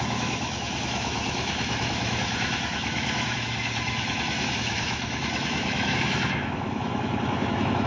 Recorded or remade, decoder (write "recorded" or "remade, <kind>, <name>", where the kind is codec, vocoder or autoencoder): remade, autoencoder, DAC-VAE